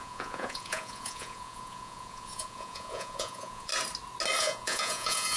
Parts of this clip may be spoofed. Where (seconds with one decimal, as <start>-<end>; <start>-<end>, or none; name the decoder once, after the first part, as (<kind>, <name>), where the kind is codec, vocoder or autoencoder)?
0.0-3.7 (vocoder, Vocos); 4.4-5.4

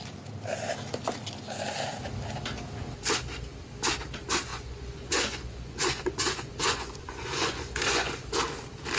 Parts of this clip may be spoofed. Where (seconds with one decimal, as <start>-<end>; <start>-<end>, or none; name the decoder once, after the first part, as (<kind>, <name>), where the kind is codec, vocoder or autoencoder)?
4.5-8.2 (vocoder, Vocos)

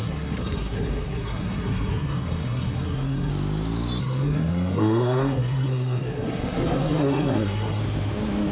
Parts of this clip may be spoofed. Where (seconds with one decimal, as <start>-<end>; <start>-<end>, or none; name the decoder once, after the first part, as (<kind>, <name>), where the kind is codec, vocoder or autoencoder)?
0.0-3.3 (codec, SNAC); 4.0-7.8

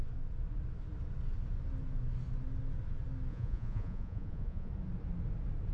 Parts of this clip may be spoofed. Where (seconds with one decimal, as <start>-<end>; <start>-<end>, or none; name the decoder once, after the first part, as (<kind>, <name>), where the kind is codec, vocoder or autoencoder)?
3.3-4.7 (vocoder, Vocos)